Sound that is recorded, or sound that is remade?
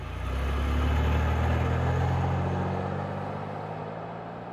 recorded